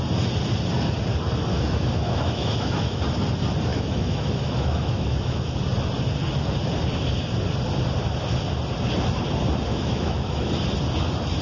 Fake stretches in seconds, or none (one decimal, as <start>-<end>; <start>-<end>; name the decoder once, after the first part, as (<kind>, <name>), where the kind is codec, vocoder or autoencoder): 1.5-3.0 (autoencoder, DAC-VAE); 3.7-5.5; 9.7-10.5